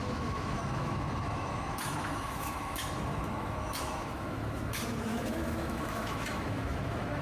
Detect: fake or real fake